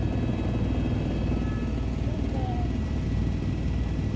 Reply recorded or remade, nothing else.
recorded